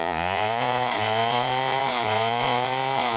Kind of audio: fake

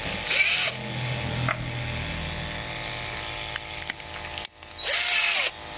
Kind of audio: real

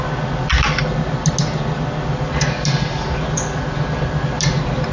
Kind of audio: real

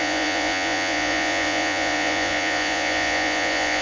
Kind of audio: fake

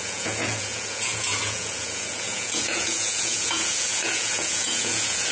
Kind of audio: fake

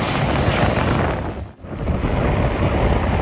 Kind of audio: real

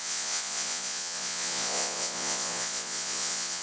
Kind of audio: fake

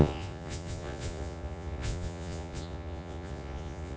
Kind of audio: fake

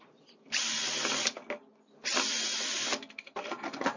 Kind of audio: real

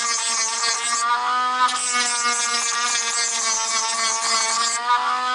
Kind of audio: real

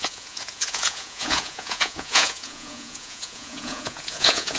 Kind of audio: fake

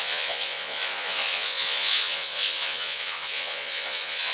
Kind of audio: fake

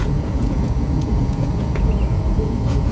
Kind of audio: fake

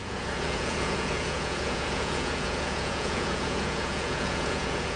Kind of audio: fake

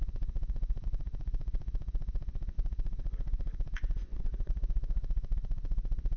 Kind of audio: fake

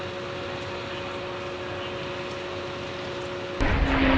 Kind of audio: real